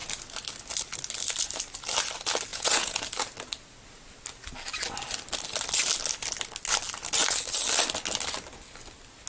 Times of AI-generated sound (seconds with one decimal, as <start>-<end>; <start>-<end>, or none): 2.5-3.0